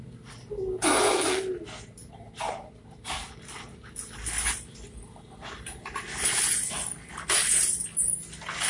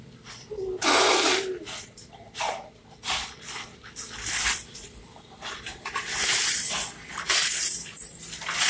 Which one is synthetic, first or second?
second